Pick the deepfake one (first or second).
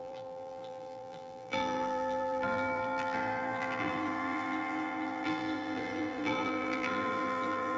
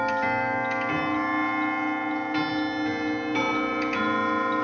first